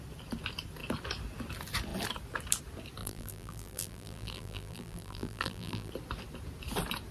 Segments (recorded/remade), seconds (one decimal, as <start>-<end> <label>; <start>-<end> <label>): 0.0-3.0 recorded; 3.0-5.9 remade; 5.9-7.1 recorded